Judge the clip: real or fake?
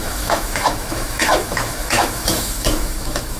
fake